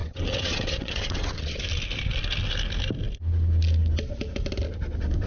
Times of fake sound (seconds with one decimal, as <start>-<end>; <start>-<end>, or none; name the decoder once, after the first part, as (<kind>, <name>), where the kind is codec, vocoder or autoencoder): 0.0-1.6 (vocoder, WaveNeXt)